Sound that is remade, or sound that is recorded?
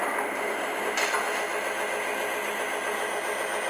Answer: recorded